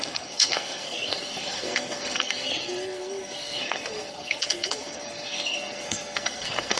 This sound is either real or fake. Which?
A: fake